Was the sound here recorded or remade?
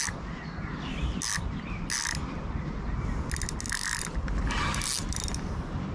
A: recorded